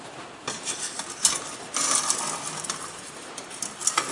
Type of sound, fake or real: real